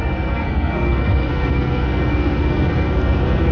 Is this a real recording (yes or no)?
no